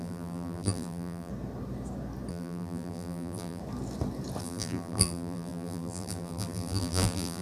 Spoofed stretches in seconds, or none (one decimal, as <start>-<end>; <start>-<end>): 0.0-1.3; 2.3-3.6; 4.4-7.4